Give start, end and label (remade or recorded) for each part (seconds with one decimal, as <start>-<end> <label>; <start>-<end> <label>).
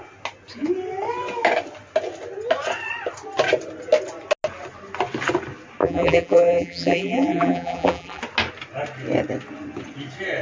0.0-5.8 recorded; 5.8-8.2 remade; 8.2-10.4 recorded